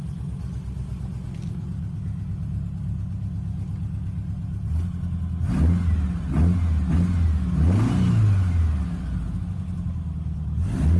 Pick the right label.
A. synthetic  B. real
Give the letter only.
B